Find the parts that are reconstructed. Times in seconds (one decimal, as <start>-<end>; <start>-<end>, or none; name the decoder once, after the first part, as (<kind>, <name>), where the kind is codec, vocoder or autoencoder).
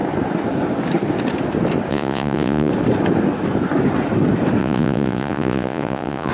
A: 1.9-2.7 (vocoder, Vocos); 4.6-6.3